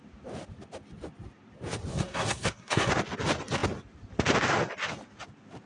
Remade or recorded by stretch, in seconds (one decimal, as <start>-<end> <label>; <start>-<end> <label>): 0.0-1.9 recorded; 1.9-2.9 remade; 2.9-5.7 recorded